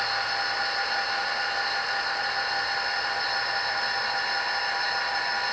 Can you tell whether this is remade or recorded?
recorded